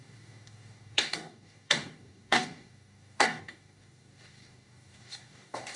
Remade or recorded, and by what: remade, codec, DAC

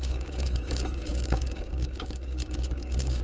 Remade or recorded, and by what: remade, codec, DAC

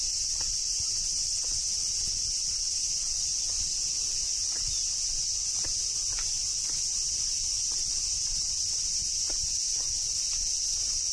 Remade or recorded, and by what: recorded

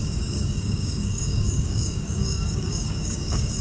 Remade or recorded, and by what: remade, codec, DAC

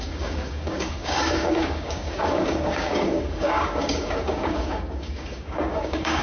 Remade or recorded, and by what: remade, codec, DAC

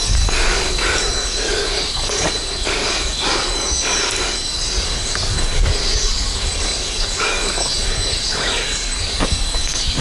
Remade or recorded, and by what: remade, codec, DAC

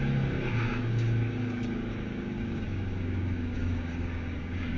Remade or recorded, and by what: remade, codec, DAC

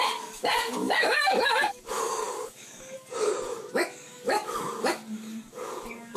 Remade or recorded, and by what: remade, codec, DAC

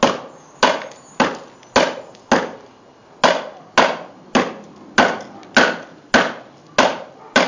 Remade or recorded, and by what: recorded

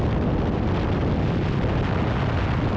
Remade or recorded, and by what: recorded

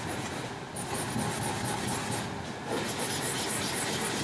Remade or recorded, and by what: recorded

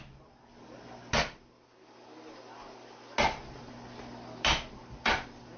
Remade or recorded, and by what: recorded